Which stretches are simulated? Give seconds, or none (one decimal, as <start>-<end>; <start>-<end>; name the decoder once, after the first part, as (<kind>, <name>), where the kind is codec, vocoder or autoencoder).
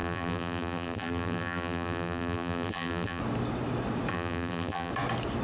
0.0-3.2 (vocoder, BigVGAN v2); 4.1-4.9